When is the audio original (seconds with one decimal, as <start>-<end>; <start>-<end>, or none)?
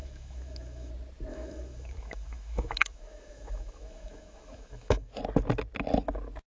0.9-1.3; 5.2-6.5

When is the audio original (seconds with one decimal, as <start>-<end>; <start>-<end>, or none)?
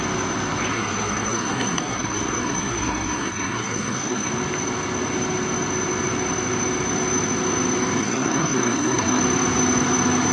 0.0-0.7; 4.3-8.0; 9.2-10.3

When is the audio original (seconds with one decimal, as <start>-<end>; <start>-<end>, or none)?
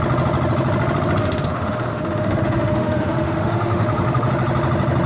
0.0-1.2; 4.3-5.1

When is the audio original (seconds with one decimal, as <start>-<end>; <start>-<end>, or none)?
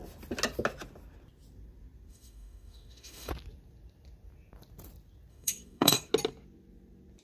0.0-2.1; 3.3-5.3; 6.1-7.2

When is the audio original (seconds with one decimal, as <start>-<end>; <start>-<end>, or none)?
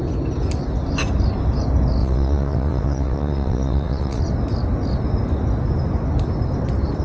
0.0-2.0; 4.2-7.0